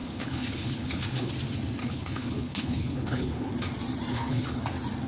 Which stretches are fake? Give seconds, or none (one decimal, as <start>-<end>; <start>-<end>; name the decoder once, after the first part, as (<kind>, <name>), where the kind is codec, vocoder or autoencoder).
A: 0.0-1.3 (codec, HILCodec); 1.8-3.5; 4.1-4.6